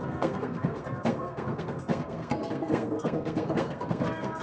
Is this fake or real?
fake